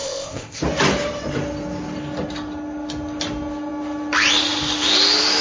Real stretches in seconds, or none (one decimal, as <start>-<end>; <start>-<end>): 0.6-5.4